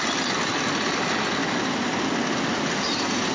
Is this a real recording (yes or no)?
yes